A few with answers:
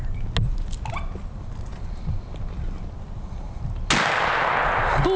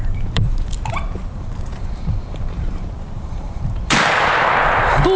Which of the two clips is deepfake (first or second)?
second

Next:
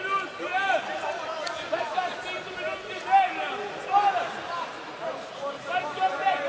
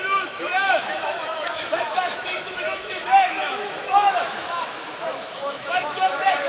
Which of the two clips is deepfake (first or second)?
second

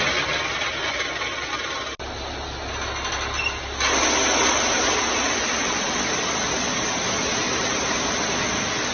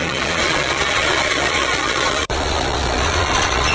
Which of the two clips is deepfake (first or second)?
second